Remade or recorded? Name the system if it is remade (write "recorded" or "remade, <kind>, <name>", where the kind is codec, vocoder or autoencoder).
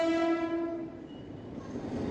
recorded